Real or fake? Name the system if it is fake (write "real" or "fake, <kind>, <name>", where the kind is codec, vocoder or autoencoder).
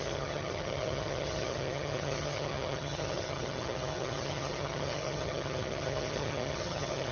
fake, vocoder, HiFi-GAN